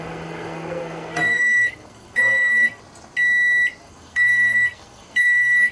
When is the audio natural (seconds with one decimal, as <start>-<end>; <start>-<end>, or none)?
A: 2.8-3.8